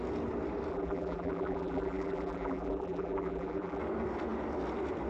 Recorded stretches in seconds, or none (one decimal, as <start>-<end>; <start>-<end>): 0.0-0.7; 3.8-5.1